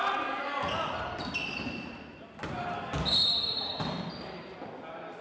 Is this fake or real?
real